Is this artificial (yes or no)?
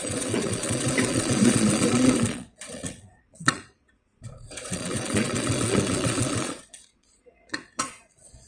yes